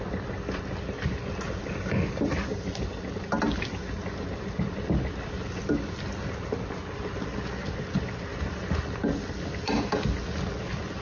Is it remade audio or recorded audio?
recorded